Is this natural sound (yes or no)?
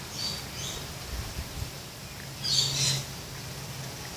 yes